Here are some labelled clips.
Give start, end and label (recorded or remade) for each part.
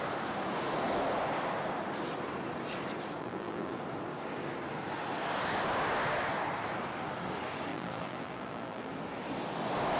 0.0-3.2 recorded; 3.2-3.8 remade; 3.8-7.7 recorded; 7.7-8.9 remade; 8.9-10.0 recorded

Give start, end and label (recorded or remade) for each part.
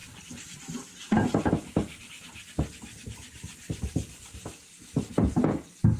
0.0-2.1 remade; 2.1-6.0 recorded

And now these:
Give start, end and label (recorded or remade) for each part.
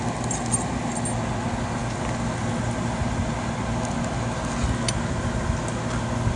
0.0-6.4 recorded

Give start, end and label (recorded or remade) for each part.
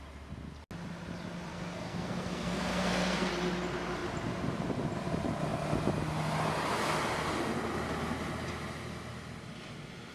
0.0-1.5 recorded; 1.5-3.3 remade; 3.3-10.1 recorded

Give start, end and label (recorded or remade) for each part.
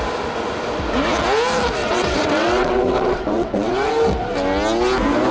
0.0-1.8 recorded; 1.8-3.9 remade; 3.9-5.3 recorded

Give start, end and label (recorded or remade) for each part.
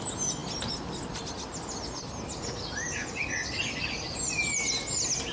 0.0-5.3 recorded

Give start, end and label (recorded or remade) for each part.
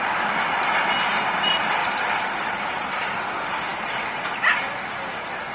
0.0-5.5 recorded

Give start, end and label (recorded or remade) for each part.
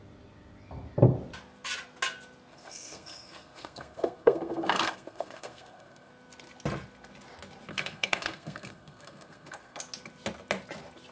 0.0-2.5 recorded; 2.5-6.1 remade; 6.1-7.7 recorded; 7.7-9.8 remade; 9.8-11.1 recorded